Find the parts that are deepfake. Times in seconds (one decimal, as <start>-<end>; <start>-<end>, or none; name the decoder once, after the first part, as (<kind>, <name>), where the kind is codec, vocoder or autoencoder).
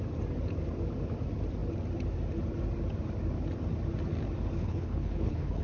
4.6-5.6 (codec, HILCodec)